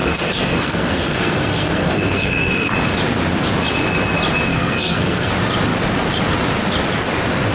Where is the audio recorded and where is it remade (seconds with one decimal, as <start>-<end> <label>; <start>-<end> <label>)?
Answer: 0.0-2.7 remade; 2.7-4.5 recorded; 4.5-5.3 remade; 5.3-7.5 recorded

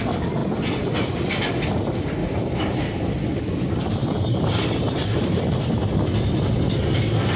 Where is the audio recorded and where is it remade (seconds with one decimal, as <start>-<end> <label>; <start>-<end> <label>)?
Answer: 0.0-2.2 recorded; 2.2-3.4 remade; 3.4-4.0 recorded; 4.0-5.9 remade; 5.9-7.4 recorded

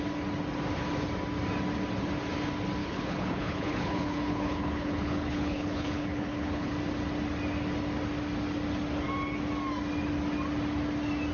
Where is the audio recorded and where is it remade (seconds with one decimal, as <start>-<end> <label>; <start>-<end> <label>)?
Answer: 0.0-2.8 recorded; 2.8-6.7 remade; 6.7-11.3 recorded